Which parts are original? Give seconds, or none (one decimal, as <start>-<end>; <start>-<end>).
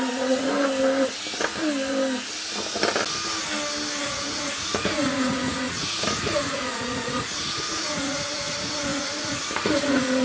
0.5-4.0